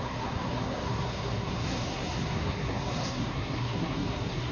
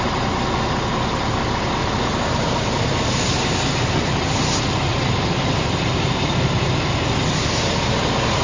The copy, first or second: first